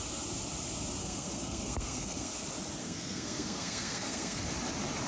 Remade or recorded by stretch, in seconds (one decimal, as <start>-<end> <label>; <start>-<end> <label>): 0.0-1.0 recorded; 1.0-2.3 remade; 2.3-2.8 recorded; 2.8-4.4 remade; 4.4-5.1 recorded